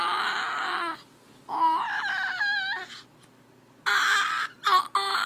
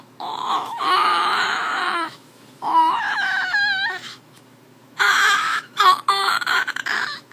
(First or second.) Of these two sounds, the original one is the first